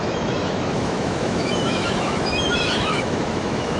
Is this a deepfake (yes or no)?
yes